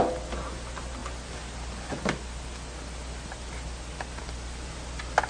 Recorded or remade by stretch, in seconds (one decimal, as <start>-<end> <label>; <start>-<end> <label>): 0.0-5.3 recorded